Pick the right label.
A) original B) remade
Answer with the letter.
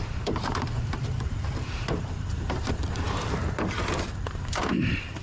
B